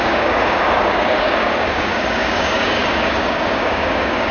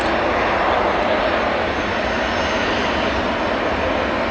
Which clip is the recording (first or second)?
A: second